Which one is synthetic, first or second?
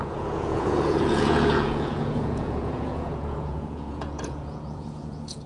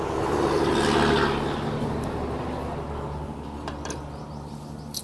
first